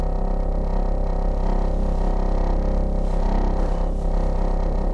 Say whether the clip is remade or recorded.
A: recorded